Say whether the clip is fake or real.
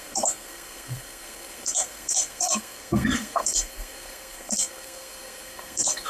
fake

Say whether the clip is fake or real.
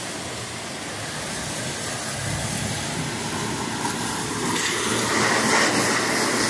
real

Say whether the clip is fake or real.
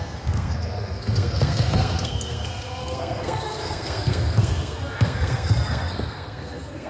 fake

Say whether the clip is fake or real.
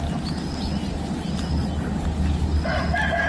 real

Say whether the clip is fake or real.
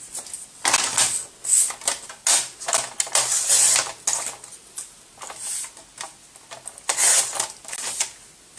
real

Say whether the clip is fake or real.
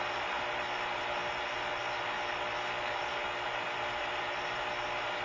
real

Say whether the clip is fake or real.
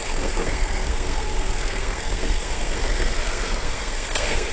fake